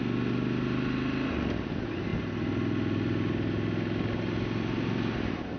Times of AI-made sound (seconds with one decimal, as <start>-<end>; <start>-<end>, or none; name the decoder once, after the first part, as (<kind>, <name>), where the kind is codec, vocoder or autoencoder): none